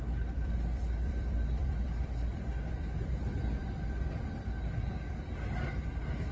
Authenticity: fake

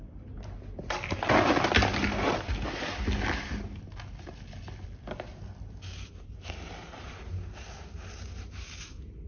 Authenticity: real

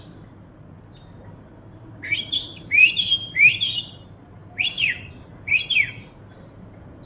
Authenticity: fake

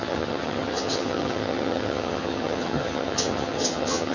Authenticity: fake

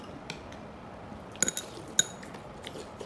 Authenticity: real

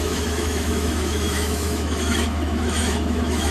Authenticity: fake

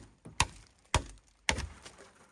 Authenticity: real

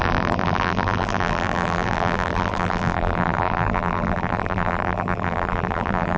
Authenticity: fake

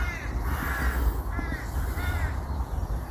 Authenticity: real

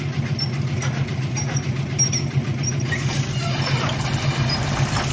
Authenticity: real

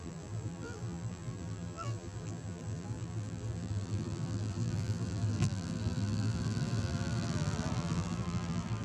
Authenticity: fake